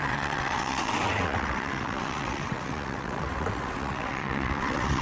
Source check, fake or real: fake